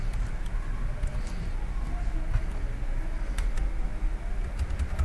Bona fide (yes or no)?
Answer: yes